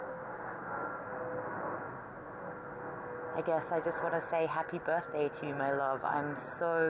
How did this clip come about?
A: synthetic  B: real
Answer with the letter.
B